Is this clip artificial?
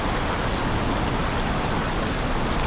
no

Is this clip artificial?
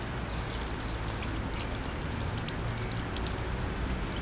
no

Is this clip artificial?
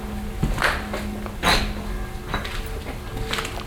no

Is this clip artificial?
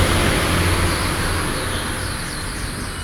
no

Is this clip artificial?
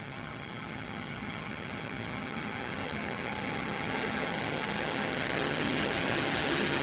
yes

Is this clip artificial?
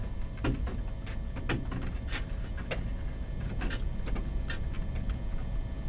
no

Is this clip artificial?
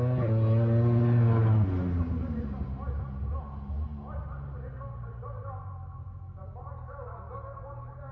no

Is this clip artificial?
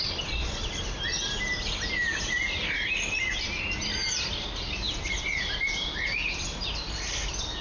no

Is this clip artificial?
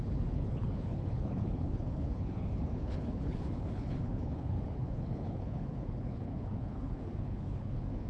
yes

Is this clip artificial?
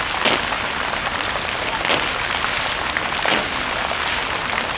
no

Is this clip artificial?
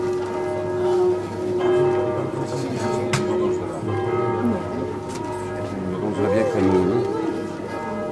no